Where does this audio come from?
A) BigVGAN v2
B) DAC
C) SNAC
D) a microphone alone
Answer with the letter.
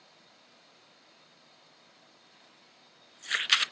D